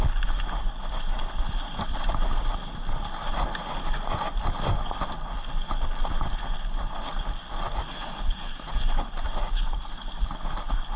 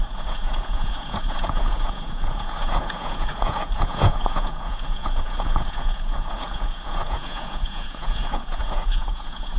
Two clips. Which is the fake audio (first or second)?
second